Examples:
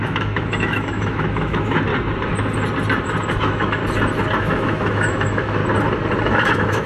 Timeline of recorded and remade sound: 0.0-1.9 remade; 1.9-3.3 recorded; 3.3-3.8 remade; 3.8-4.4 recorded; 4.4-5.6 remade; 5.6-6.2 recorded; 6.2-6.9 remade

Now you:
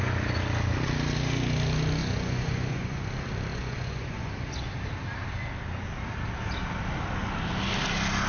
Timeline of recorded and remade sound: 0.0-2.0 recorded; 2.0-3.0 remade; 3.0-3.5 recorded; 3.5-4.3 remade; 4.3-8.3 recorded

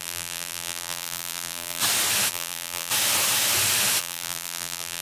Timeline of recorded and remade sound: 0.0-1.8 remade; 1.8-2.3 recorded; 2.3-2.9 remade; 2.9-4.0 recorded; 4.0-5.0 remade